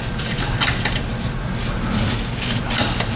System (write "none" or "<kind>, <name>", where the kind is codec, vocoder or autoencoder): none